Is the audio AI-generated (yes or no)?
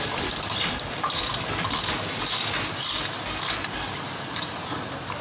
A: no